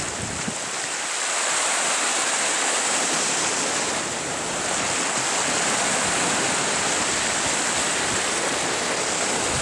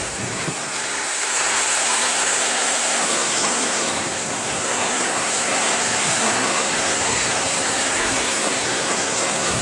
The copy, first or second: second